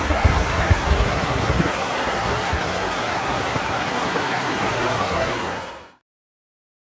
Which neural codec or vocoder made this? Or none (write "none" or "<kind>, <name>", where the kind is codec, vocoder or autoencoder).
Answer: codec, SNAC